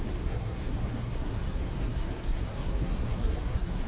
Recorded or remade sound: remade